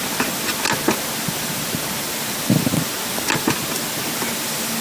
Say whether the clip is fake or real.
real